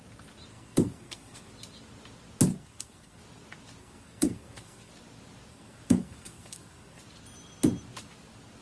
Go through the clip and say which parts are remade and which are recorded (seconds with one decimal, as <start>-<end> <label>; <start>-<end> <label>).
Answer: 0.0-0.5 recorded; 0.5-1.5 remade; 1.5-2.5 recorded; 2.5-3.2 remade; 3.2-3.8 recorded; 3.8-4.9 remade; 4.9-5.5 recorded; 5.5-7.0 remade; 7.0-8.6 recorded